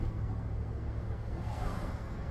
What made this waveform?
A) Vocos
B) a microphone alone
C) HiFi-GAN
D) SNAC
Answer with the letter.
D